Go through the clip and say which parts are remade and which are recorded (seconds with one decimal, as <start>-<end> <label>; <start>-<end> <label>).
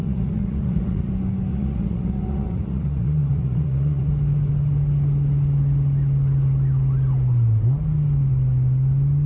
0.0-1.1 remade; 1.1-1.5 recorded; 1.5-4.1 remade; 4.1-9.3 recorded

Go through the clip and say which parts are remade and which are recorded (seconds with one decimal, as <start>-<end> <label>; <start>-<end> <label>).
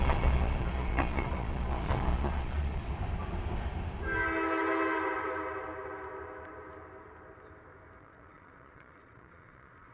0.0-2.8 remade; 2.8-8.0 recorded; 8.0-9.9 remade